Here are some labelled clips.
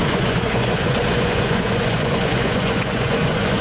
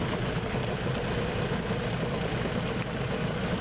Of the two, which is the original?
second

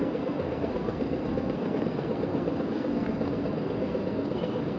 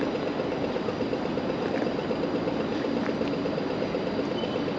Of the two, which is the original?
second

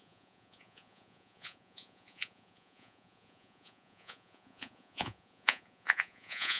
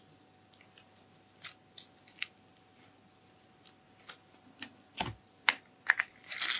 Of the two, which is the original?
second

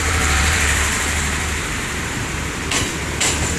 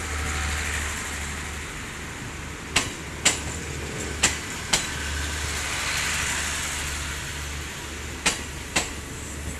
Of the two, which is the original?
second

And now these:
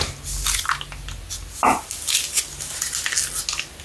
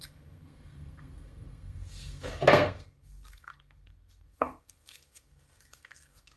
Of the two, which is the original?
first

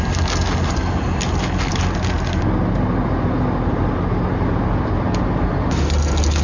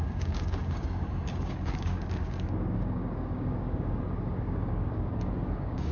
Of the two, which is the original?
first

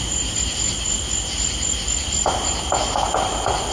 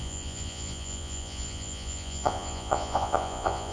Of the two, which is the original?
first